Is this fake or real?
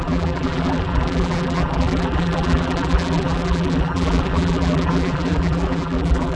fake